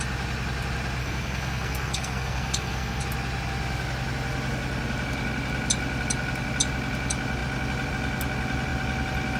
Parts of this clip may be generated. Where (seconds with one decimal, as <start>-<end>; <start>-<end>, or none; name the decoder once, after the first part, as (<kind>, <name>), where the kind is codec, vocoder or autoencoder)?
1.0-3.0 (codec, SNAC)